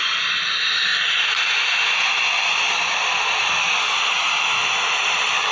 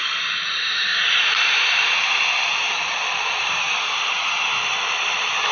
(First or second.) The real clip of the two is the first